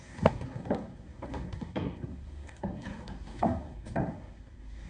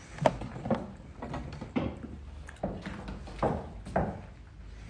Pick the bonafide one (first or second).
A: second